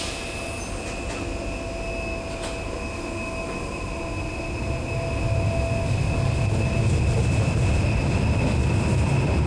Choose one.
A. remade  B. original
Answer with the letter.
B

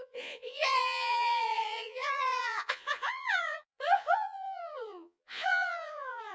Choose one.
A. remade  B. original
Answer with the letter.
A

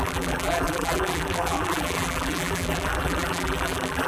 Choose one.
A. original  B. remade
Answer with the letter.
B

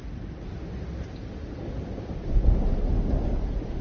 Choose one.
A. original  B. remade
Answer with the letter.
A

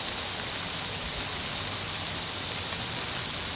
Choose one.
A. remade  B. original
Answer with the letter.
B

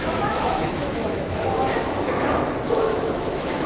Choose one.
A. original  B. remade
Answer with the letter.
B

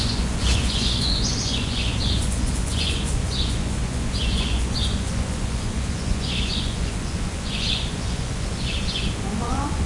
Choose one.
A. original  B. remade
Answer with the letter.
B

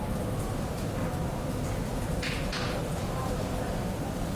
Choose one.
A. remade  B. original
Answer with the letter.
B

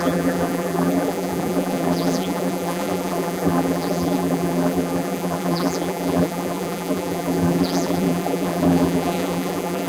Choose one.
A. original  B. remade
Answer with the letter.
B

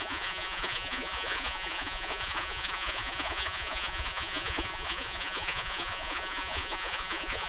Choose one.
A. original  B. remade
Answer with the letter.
B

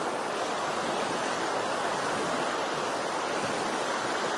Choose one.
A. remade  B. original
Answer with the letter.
B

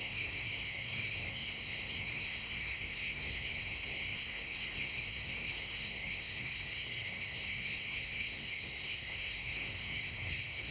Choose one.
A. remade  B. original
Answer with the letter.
A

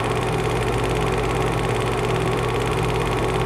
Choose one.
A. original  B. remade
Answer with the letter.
A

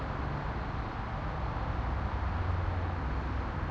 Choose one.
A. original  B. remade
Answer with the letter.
A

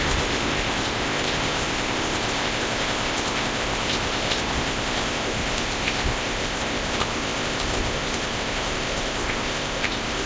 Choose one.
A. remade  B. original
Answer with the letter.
A